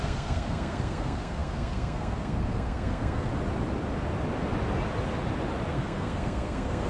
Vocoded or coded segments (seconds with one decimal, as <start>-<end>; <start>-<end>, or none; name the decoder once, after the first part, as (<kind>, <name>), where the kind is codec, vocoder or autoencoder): 0.0-3.3 (codec, SNAC); 5.7-6.9